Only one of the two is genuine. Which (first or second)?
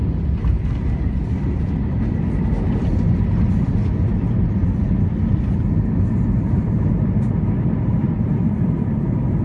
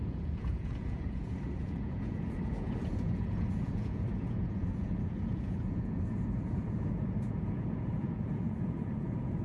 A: first